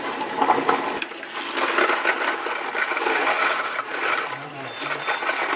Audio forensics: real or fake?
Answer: real